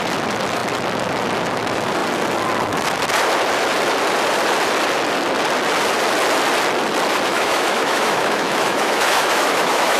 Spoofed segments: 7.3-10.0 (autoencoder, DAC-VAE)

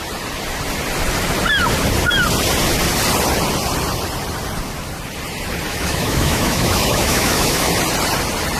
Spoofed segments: 5.7-7.7 (autoencoder, DAC-VAE)

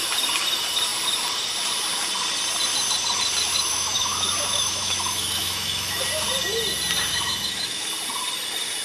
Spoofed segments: 3.5-6.0 (autoencoder, DAC-VAE); 7.1-7.9

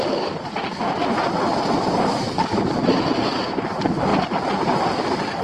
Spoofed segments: none

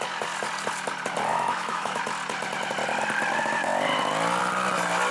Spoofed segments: 1.3-2.0 (autoencoder, DAC-VAE)

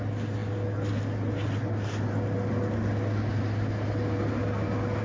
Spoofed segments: none

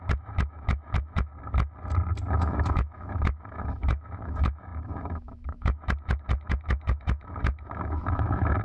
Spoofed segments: 0.0-1.3 (autoencoder, DAC-VAE); 2.3-8.6

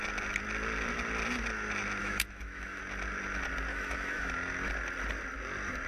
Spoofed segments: 2.0-2.8 (autoencoder, DAC-VAE); 3.7-4.3